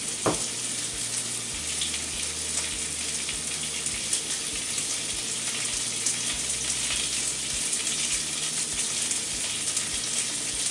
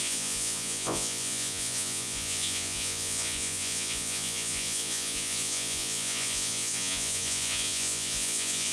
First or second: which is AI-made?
second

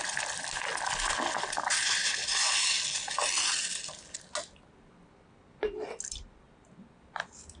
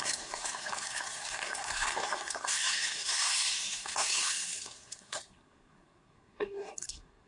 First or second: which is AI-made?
second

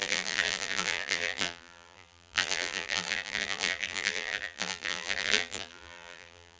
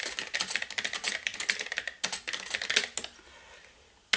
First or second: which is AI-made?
first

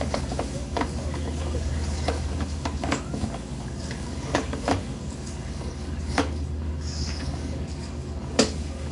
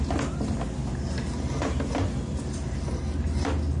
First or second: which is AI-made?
first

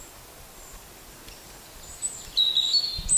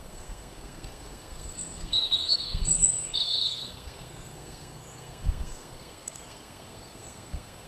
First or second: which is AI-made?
second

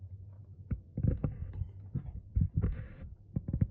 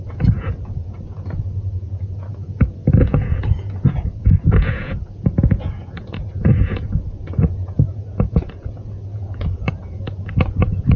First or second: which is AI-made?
second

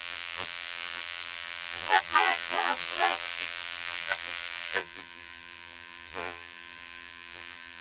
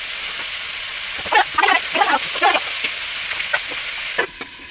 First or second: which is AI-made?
first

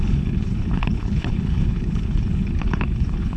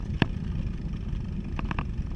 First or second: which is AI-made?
first